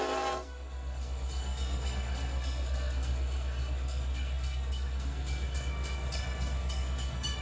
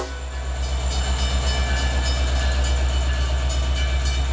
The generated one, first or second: first